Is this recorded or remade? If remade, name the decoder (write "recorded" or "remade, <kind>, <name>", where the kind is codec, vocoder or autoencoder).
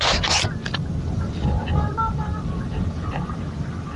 recorded